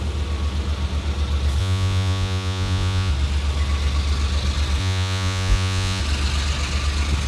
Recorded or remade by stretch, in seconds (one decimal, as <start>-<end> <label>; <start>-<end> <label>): 0.0-1.6 recorded; 1.6-3.1 remade; 3.1-4.8 recorded; 4.8-6.0 remade; 6.0-7.3 recorded